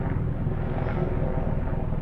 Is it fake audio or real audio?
real